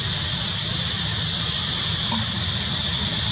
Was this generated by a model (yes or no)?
no